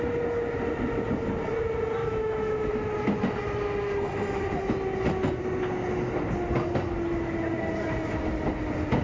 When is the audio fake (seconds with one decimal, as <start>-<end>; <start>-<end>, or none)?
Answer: 2.0-2.7